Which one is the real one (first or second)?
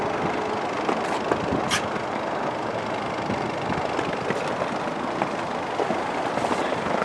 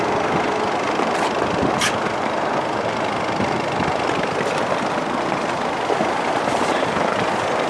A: first